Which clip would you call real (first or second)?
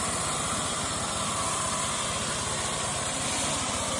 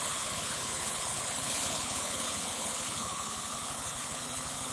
first